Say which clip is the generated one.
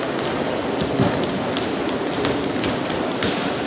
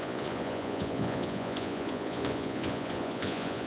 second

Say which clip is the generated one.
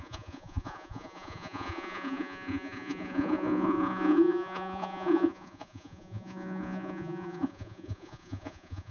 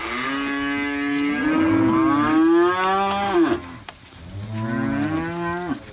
first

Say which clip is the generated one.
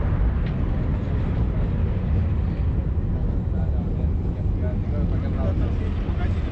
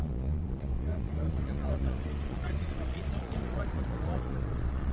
second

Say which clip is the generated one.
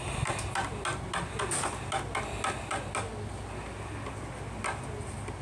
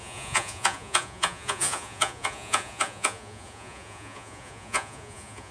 second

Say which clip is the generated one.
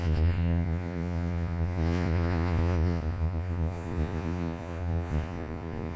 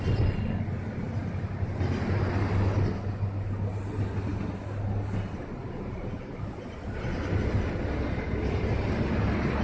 first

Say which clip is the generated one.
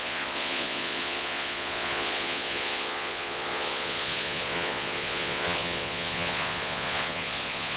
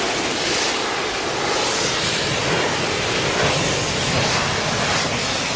first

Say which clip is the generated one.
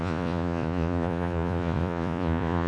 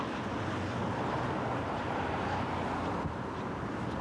first